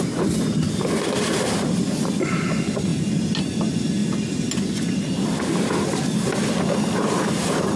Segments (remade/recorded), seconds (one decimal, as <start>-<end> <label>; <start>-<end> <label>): 0.0-7.8 recorded